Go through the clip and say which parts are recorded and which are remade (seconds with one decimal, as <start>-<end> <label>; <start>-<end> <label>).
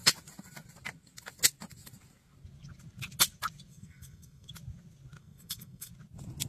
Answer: 0.0-3.7 recorded; 3.7-4.5 remade; 4.5-5.2 recorded; 5.2-5.9 remade; 5.9-6.5 recorded